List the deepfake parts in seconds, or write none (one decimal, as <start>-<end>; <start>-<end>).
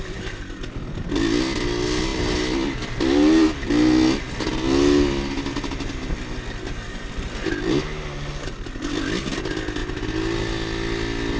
none